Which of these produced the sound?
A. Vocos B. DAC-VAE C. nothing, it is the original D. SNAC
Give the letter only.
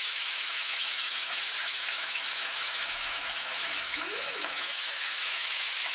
B